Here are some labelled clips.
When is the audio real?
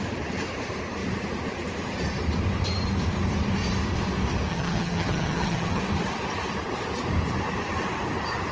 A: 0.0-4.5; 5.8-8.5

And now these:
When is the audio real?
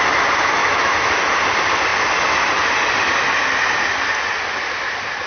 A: 0.0-0.6; 1.3-5.3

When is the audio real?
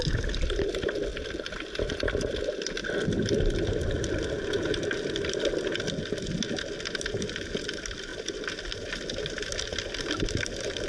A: 0.0-1.1; 4.4-8.1; 9.5-10.9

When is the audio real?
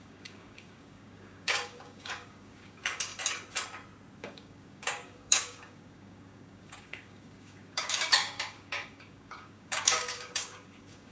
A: 3.1-4.2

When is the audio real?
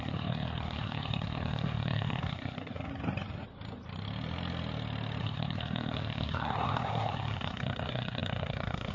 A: 2.9-5.2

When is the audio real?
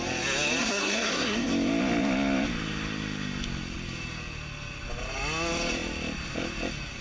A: 0.0-0.6; 1.5-7.0